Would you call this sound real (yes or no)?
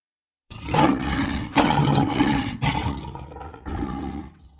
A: no